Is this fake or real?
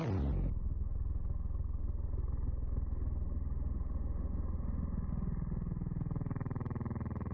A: real